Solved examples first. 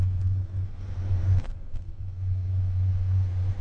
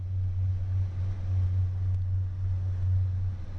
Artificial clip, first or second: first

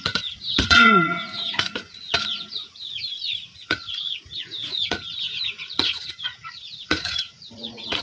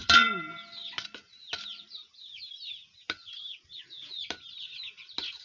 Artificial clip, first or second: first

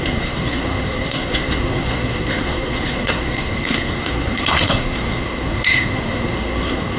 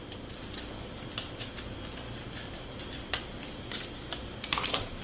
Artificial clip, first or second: first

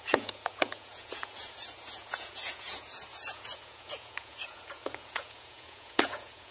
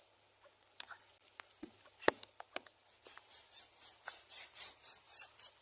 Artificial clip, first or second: first